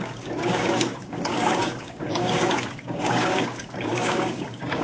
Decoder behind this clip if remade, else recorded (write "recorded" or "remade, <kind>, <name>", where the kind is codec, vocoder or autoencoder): remade, codec, DAC